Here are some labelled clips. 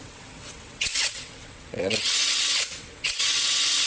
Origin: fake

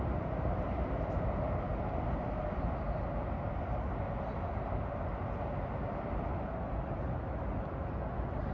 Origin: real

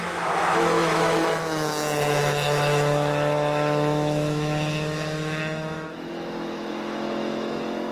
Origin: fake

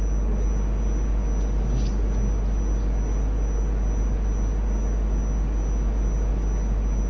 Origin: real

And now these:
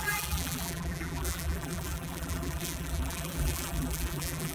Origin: fake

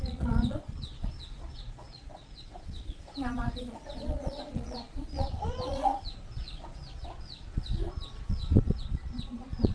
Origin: fake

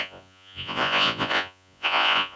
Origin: fake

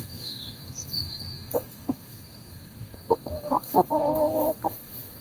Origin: fake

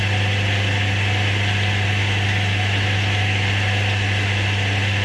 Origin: real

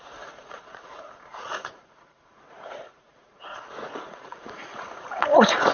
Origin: fake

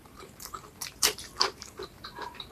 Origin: fake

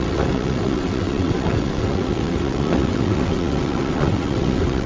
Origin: fake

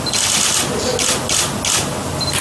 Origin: real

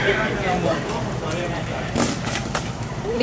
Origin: fake